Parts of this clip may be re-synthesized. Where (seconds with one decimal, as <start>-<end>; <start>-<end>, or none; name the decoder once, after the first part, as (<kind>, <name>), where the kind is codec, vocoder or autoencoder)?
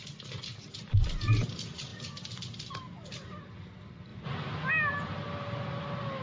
none